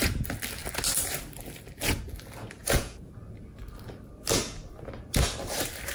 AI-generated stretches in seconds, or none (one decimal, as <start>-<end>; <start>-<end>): 2.6-3.1

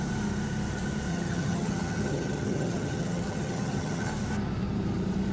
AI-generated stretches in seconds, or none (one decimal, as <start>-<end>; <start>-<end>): 1.1-4.1

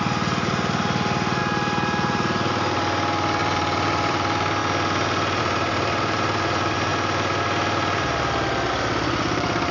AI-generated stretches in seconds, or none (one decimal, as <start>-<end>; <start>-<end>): 0.0-1.4; 3.4-4.6; 5.4-6.9; 8.7-9.7

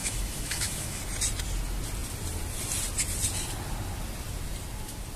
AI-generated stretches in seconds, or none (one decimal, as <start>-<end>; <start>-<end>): 0.0-1.0

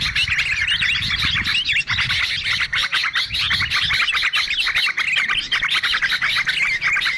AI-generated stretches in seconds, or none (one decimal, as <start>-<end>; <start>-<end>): none

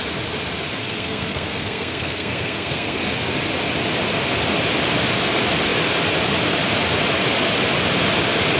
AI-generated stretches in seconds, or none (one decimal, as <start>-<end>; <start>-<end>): 0.8-3.0

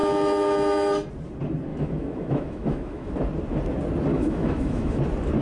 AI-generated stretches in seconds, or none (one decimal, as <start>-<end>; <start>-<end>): 1.7-3.1; 4.1-5.0

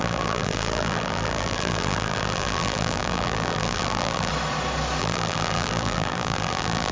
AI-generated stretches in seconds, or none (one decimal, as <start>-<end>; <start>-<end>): 0.0-4.3; 5.0-6.9